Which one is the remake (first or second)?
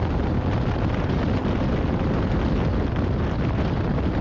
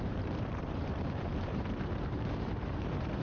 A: second